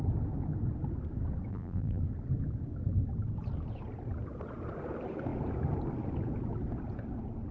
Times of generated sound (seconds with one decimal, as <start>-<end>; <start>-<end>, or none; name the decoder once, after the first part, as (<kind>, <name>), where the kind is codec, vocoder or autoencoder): 1.5-2.0 (vocoder, BigVGAN v2)